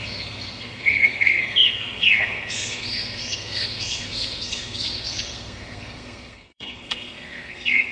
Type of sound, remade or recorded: remade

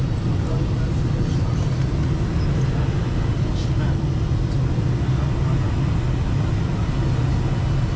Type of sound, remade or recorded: recorded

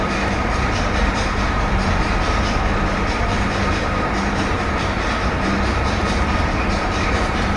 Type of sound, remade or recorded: remade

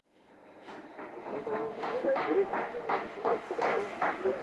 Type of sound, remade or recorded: remade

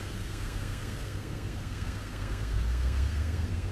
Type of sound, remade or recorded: remade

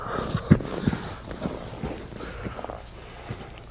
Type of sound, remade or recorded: recorded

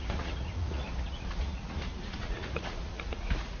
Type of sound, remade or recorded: remade